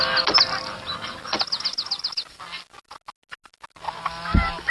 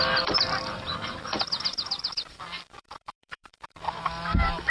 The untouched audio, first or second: first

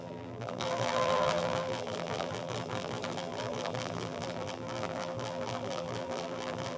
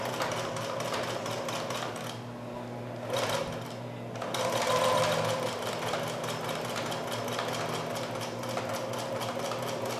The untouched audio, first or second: second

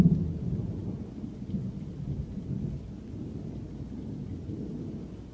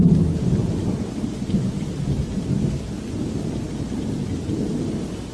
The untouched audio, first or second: second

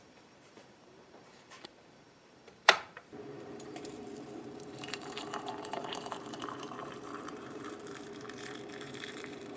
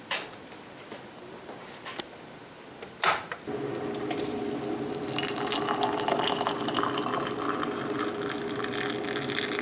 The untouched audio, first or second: second